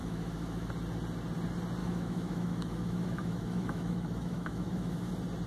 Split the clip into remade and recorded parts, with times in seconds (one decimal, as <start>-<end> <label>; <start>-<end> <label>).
0.0-0.7 remade; 0.7-1.8 recorded; 1.8-5.1 remade; 5.1-5.5 recorded